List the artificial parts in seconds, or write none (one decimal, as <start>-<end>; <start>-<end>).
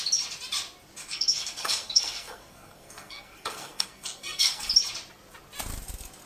1.0-4.7